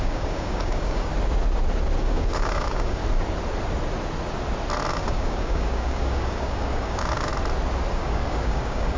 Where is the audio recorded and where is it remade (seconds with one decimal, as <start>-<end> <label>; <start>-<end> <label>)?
0.0-1.1 remade; 1.1-2.0 recorded; 2.0-3.0 remade; 3.0-4.9 recorded; 4.9-7.3 remade; 7.3-7.9 recorded; 7.9-9.0 remade